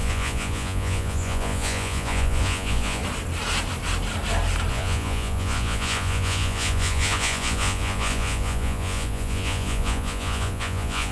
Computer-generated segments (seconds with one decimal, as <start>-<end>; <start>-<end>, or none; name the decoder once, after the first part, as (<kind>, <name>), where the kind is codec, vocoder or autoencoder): 0.0-3.0 (vocoder, Vocos); 4.7-11.1

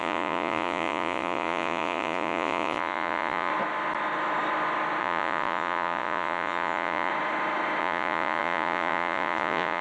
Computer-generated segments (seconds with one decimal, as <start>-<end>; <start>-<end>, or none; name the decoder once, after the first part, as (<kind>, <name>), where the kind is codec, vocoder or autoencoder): 0.0-3.5 (vocoder, Vocos); 5.0-7.1; 7.8-9.8

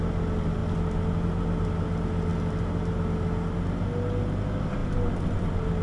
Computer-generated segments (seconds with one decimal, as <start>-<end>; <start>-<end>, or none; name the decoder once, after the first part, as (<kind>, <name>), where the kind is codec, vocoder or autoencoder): none

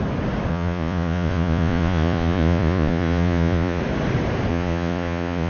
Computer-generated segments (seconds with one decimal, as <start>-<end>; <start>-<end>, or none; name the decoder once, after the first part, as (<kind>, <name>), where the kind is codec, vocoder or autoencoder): 0.5-3.8 (vocoder, Vocos); 4.5-5.5

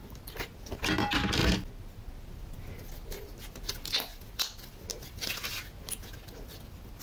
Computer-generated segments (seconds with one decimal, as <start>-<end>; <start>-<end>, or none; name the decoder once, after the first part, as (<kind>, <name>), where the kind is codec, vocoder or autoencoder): none

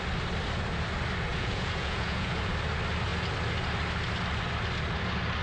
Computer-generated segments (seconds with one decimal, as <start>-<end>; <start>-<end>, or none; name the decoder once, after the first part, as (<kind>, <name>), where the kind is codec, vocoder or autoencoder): 1.3-2.5 (vocoder, Vocos)

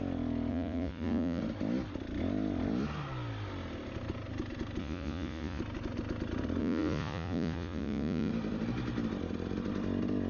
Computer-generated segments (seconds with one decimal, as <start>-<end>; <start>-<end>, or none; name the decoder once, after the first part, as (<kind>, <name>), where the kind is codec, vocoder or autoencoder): 0.5-1.4 (vocoder, Vocos); 4.8-5.6; 6.6-8.3